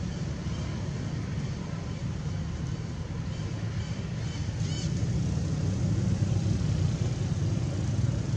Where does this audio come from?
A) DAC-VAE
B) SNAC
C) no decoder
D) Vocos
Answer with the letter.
C